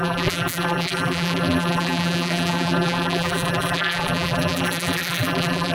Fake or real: fake